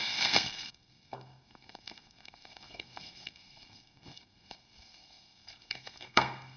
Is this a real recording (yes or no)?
no